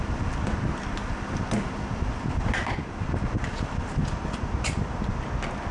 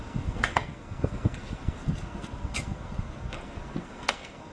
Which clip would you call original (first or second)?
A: first